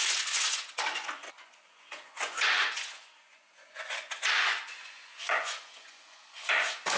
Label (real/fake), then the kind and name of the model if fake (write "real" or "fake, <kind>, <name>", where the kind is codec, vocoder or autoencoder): fake, vocoder, Vocos